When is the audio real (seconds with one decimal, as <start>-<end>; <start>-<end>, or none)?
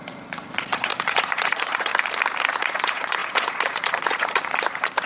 1.9-2.6